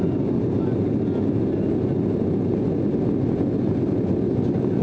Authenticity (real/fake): real